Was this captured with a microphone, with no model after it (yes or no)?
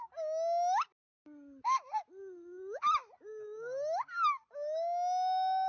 yes